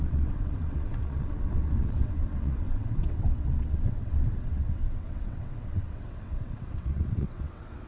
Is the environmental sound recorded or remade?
remade